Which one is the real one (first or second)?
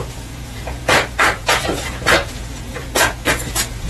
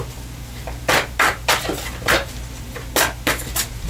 second